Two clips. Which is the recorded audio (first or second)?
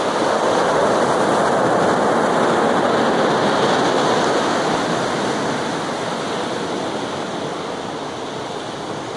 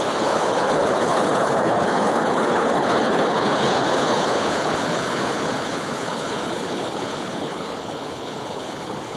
first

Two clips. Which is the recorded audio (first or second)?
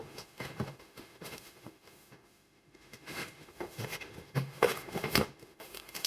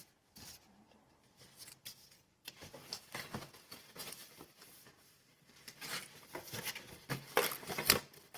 second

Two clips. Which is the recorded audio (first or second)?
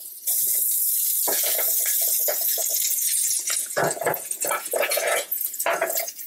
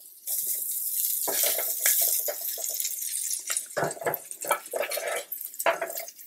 second